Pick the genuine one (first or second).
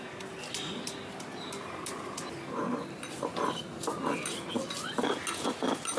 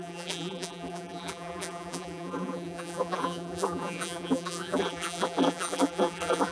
first